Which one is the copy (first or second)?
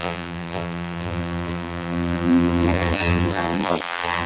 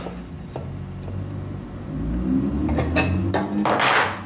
first